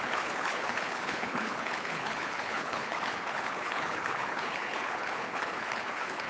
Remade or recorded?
remade